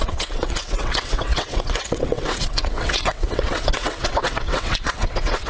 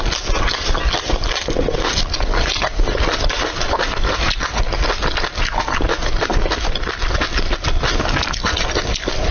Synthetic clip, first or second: first